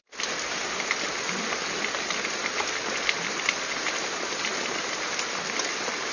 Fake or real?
real